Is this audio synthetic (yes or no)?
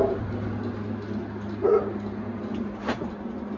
no